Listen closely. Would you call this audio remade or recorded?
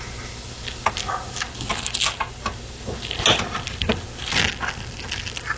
recorded